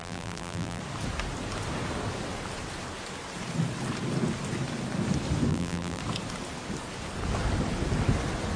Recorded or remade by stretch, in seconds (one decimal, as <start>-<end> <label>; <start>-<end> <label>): 0.0-0.8 remade; 0.8-5.5 recorded; 5.5-6.0 remade; 6.0-8.6 recorded